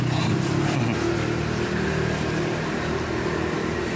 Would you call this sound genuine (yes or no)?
yes